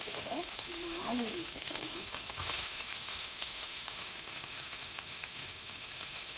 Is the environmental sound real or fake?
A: fake